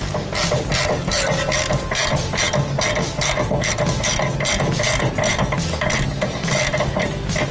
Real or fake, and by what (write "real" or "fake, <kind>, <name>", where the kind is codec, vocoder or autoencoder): real